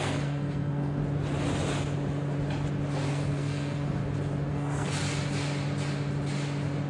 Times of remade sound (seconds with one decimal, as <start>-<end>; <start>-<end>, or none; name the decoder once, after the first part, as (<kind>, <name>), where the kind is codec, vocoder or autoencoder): 0.0-1.0 (codec, SNAC); 3.1-4.0; 4.5-5.0